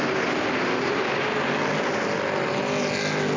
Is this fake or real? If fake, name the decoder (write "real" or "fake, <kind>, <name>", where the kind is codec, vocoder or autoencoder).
real